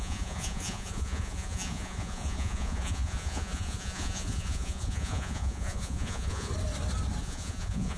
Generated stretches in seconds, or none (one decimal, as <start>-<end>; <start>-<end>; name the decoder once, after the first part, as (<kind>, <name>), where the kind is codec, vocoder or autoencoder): 0.0-6.5 (vocoder, Vocos); 7.2-8.0